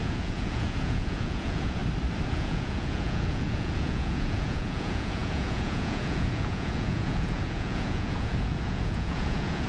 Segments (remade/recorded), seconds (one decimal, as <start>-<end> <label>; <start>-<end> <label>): 0.0-1.8 remade; 1.8-2.3 recorded; 2.3-9.7 remade